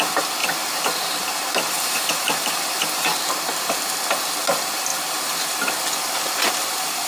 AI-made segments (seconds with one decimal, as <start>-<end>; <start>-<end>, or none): 0.4-3.3